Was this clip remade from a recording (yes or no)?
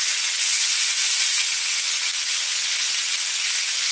yes